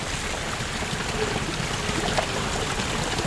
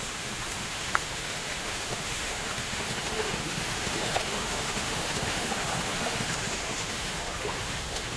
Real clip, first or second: first